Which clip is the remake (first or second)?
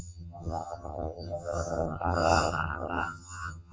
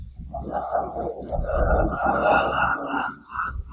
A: first